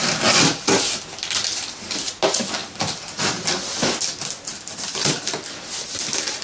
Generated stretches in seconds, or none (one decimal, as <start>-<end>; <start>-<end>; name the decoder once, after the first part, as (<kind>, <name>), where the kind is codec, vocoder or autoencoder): none

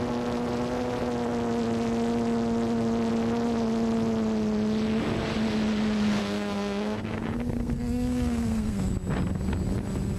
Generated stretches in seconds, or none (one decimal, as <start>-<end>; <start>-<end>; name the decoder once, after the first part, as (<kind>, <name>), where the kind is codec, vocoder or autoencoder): 6.2-8.9 (codec, SNAC)